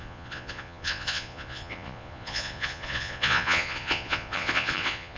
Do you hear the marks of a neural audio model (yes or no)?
yes